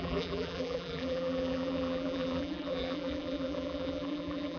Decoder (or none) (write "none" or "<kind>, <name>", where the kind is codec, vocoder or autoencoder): vocoder, BigVGAN v2